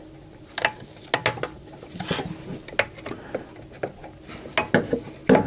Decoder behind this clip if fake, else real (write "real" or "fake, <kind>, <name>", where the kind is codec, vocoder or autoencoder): real